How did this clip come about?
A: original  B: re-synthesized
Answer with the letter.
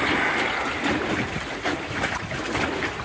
A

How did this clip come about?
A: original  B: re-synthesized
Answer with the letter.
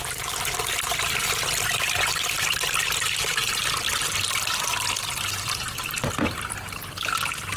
A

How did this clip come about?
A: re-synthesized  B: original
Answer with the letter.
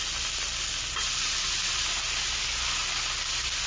B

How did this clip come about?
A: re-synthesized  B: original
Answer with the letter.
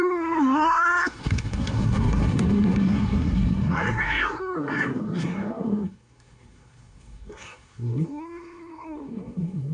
A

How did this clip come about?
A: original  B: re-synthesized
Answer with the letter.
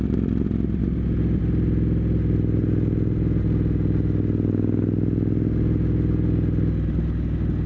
A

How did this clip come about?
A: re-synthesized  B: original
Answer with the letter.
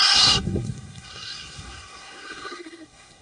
A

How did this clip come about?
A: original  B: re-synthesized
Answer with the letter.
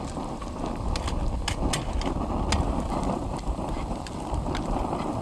A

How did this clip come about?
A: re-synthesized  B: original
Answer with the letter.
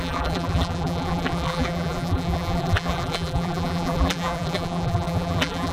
A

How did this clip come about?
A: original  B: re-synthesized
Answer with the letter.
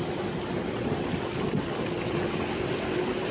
A